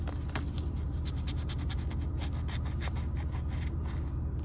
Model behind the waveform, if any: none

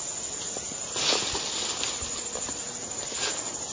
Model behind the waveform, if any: none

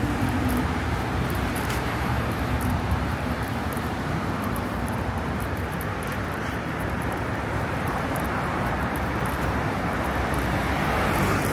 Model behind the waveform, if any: vocoder, BigVGAN v2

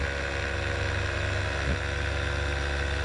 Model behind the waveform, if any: none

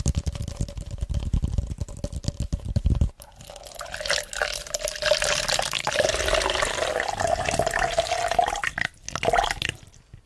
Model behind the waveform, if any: none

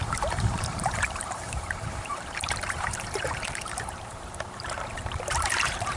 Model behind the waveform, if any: vocoder, BigVGAN v2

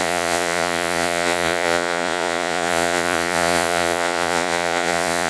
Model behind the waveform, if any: vocoder, Vocos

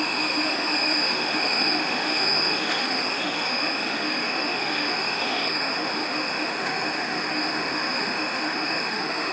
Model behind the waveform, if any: autoencoder, DAC-VAE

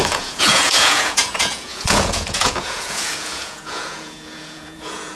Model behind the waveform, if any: vocoder, Vocos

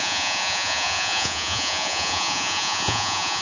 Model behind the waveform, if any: vocoder, Vocos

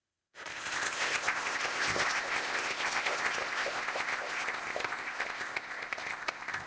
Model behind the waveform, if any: codec, ZipCodec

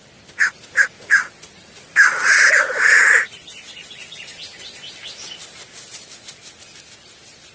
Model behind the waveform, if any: none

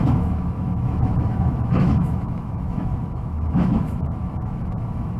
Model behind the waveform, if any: autoencoder, DAC-VAE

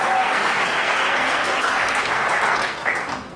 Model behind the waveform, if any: codec, SNAC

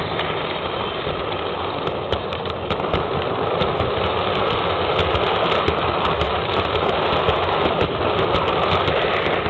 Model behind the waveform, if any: none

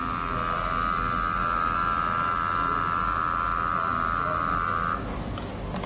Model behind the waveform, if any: none